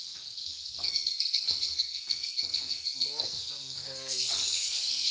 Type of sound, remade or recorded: remade